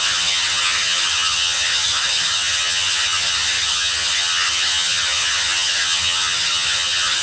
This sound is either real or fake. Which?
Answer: fake